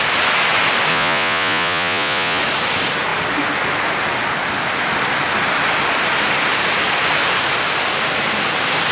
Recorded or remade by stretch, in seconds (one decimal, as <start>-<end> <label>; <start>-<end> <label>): 0.0-0.9 recorded; 0.9-2.4 remade; 2.4-8.9 recorded